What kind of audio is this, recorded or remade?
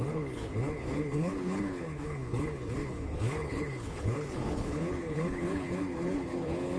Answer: remade